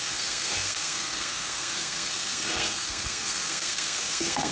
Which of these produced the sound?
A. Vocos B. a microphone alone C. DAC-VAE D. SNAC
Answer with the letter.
D